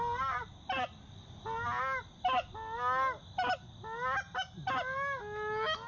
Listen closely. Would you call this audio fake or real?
real